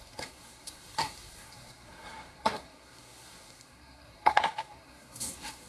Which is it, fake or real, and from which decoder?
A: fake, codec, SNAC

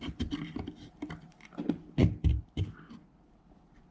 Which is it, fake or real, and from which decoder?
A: real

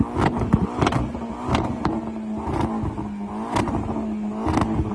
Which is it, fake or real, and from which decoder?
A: real